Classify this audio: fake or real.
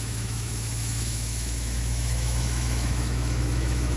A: fake